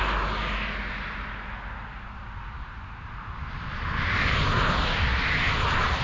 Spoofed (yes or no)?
no